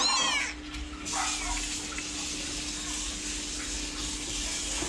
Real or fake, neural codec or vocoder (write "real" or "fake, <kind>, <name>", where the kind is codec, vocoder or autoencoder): real